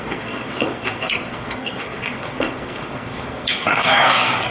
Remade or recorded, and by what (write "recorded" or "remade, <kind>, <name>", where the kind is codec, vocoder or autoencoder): remade, codec, SNAC